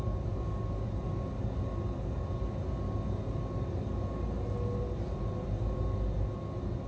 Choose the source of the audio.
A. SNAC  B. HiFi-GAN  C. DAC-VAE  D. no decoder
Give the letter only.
D